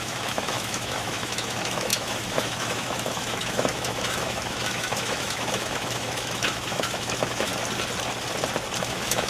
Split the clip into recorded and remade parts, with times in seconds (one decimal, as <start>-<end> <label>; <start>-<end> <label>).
0.0-7.5 remade; 7.5-8.8 recorded; 8.8-9.3 remade